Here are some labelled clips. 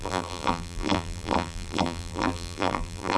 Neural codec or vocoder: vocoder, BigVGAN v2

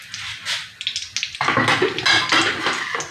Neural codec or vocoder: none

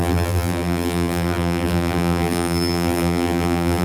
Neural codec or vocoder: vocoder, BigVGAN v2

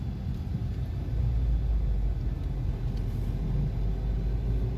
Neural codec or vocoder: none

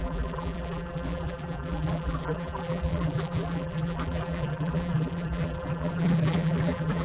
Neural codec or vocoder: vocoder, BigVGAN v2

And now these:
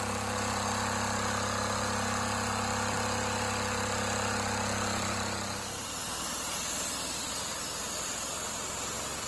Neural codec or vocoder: none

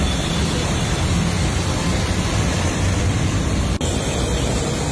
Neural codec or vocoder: vocoder, BigVGAN v2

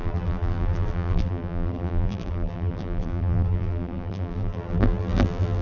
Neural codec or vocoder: vocoder, BigVGAN v2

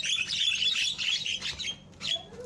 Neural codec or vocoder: none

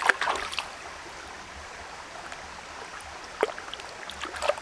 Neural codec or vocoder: none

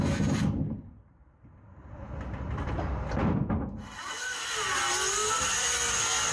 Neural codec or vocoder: none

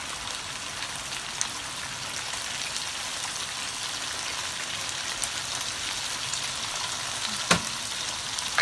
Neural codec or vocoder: none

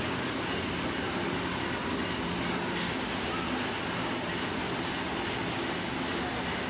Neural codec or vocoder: none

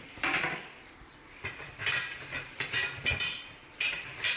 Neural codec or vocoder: vocoder, BigVGAN v2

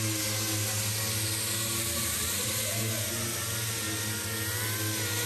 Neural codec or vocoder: none